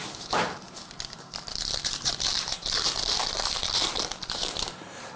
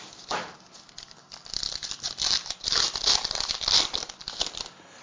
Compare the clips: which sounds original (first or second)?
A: second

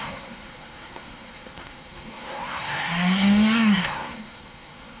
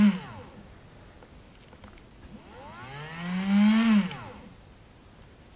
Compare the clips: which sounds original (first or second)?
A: second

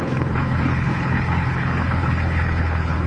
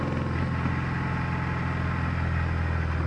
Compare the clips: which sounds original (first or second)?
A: second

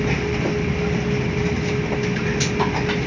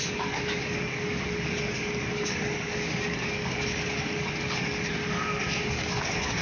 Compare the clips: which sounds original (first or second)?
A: first